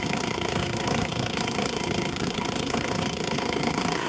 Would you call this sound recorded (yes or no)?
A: no